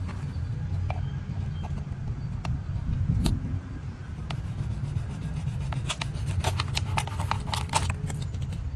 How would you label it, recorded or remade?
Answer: recorded